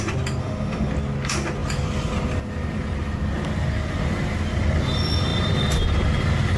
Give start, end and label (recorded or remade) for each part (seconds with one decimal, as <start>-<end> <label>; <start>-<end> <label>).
0.0-0.4 recorded; 0.4-0.9 remade; 0.9-6.6 recorded